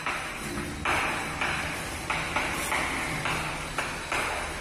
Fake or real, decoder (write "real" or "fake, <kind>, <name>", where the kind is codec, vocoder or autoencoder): real